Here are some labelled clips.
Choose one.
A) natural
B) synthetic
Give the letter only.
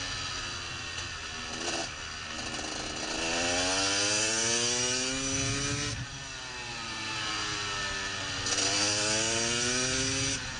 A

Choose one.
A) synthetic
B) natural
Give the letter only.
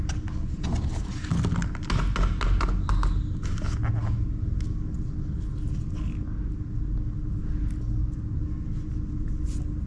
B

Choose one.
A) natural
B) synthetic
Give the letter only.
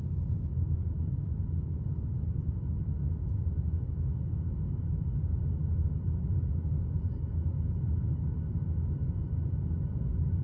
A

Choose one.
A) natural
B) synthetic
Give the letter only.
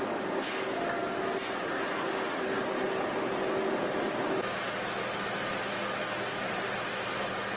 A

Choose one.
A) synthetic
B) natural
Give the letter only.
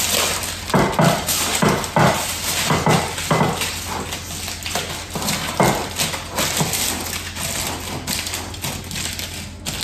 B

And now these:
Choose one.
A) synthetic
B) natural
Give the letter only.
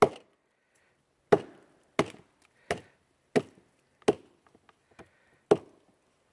B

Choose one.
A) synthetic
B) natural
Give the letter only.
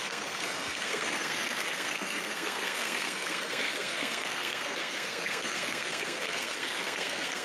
A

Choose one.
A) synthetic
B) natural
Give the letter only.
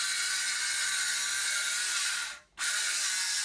B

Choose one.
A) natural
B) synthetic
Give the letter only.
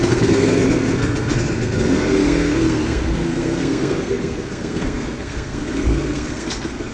B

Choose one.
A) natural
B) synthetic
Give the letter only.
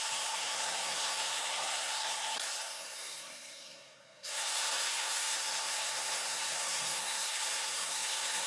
B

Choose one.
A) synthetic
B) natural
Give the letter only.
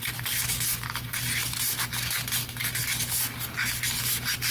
B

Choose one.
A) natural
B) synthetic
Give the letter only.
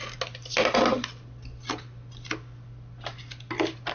A